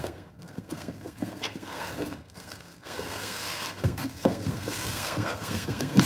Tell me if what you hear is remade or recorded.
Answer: remade